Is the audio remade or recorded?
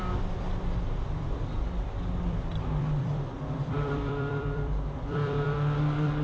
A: remade